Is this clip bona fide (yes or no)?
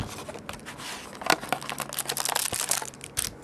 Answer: yes